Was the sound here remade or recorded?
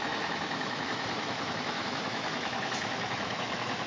remade